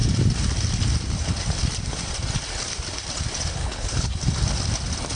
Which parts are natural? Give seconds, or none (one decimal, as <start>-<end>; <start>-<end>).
0.0-3.6; 4.2-5.1